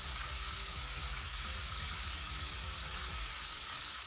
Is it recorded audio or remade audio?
remade